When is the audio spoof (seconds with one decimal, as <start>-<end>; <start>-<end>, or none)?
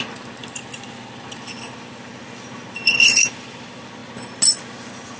none